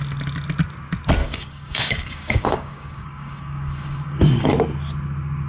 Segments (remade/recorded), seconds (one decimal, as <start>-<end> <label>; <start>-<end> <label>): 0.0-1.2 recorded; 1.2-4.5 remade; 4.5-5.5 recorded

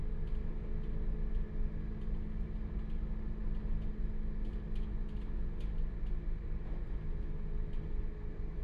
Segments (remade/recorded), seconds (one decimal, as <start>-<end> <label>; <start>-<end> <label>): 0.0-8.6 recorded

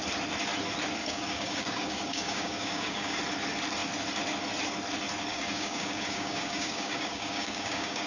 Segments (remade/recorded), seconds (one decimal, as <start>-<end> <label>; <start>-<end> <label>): 0.0-1.0 recorded; 1.0-3.2 remade; 3.2-5.3 recorded; 5.3-8.1 remade